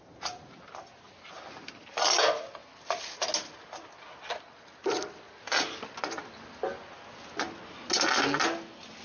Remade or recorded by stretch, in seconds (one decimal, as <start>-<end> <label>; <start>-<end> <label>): 0.0-9.0 recorded